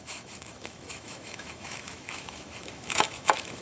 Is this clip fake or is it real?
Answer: fake